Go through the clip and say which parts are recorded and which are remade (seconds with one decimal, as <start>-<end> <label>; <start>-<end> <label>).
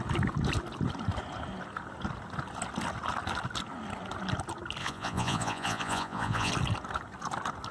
0.0-4.8 recorded; 4.8-6.5 remade; 6.5-7.7 recorded